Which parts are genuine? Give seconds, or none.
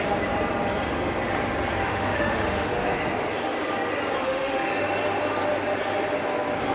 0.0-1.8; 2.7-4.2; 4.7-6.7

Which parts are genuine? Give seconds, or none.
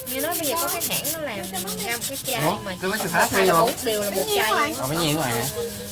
0.0-2.3; 3.5-4.2